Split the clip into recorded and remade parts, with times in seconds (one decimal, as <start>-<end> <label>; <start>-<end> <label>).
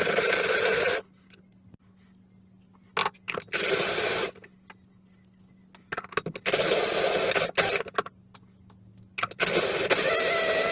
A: 0.0-10.7 recorded